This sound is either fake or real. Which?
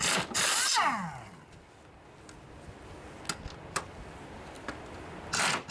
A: real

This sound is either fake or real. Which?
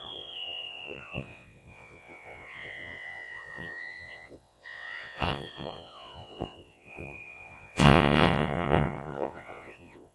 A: fake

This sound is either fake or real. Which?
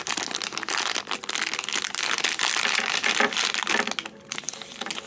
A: real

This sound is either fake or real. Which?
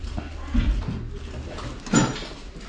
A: real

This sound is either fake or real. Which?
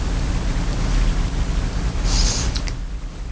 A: real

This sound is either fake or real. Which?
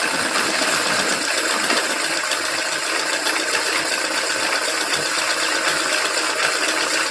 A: real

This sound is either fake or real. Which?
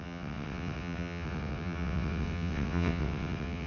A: fake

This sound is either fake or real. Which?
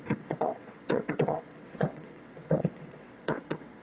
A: fake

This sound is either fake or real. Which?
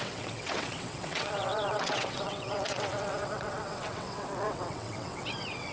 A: fake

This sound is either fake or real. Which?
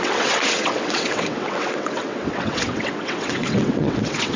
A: fake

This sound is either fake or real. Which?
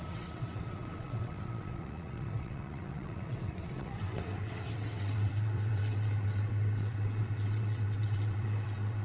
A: fake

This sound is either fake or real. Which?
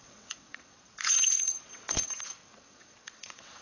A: fake